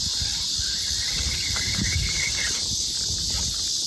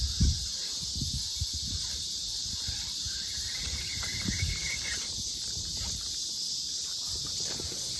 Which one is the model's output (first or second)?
second